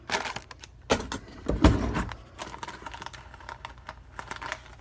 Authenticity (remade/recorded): recorded